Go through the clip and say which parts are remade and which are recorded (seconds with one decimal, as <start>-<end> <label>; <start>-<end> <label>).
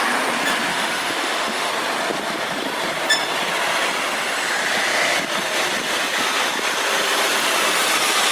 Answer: 0.0-0.7 recorded; 0.7-1.7 remade; 1.7-8.3 recorded